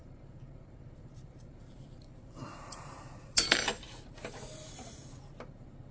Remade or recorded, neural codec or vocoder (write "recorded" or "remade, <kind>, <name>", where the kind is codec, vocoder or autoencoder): remade, vocoder, BigVGAN v2